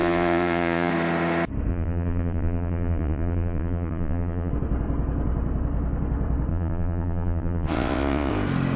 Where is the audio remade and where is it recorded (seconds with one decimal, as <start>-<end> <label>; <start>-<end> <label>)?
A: 0.0-0.9 remade; 0.9-1.7 recorded; 1.7-4.5 remade; 4.5-6.5 recorded; 6.5-8.3 remade; 8.3-8.8 recorded